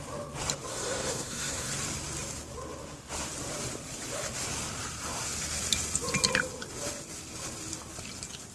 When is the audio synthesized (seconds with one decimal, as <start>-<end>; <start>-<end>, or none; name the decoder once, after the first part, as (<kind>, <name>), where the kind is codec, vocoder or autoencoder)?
0.7-1.7 (codec, SNAC)